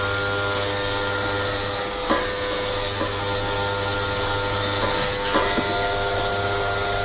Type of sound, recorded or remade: recorded